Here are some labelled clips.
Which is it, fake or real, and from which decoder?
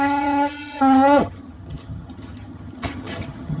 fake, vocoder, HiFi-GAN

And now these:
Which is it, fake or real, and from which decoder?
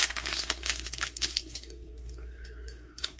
fake, codec, SNAC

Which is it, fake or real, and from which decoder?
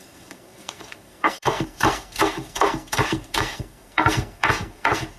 fake, codec, SNAC